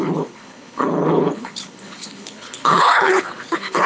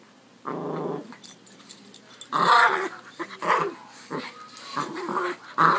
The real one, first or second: second